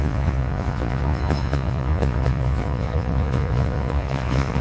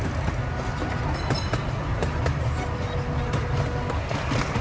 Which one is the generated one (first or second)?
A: first